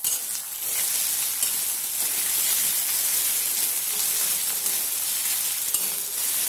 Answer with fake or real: real